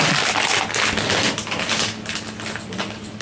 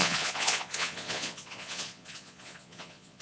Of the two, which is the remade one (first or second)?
second